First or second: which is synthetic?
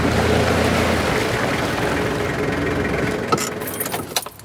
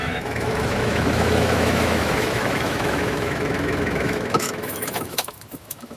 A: second